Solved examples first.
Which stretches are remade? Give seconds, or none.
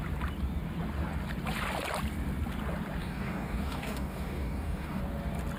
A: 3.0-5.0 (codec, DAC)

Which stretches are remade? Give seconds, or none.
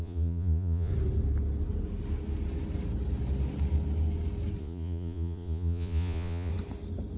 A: 0.0-0.9 (vocoder, Vocos); 4.6-6.5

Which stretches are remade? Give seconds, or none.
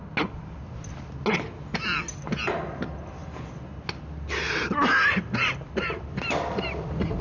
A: none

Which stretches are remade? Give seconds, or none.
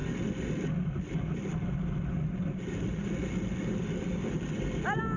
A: none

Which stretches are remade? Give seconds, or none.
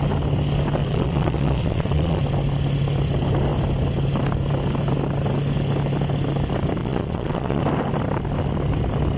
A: 0.8-2.2 (vocoder, Vocos); 6.8-7.6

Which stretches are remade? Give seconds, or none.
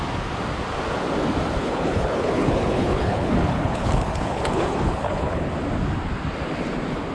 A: 1.6-5.5 (codec, HILCodec)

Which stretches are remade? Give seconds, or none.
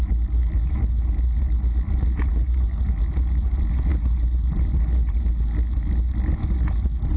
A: 2.3-2.8 (codec, DAC)